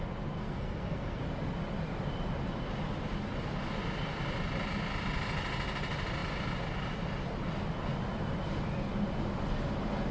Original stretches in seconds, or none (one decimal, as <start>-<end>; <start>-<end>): 0.0-0.4; 1.2-10.1

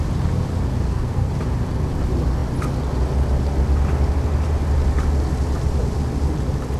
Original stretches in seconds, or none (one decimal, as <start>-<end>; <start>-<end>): 0.0-0.7; 1.3-6.8

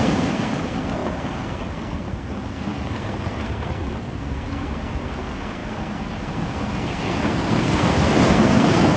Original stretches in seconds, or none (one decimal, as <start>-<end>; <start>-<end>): none

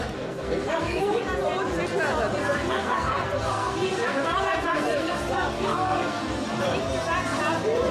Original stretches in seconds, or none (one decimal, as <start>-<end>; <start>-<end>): 1.2-2.4; 6.2-7.9

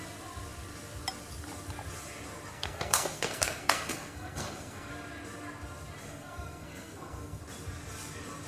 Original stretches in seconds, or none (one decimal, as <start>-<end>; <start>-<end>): 0.0-2.5; 4.9-6.0; 7.4-8.5

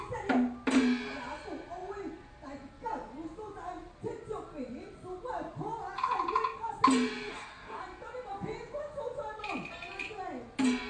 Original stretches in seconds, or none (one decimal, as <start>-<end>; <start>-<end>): 0.0-7.3; 7.8-10.9